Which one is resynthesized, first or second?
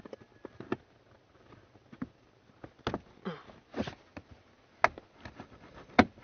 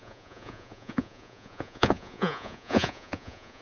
second